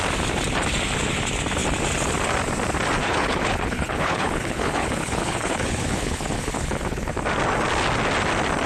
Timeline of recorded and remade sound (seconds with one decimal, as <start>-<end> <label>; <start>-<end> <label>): 0.0-3.0 recorded; 3.0-7.1 remade; 7.1-8.7 recorded